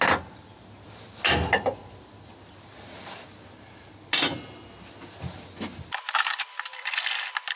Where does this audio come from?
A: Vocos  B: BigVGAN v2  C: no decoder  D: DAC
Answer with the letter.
C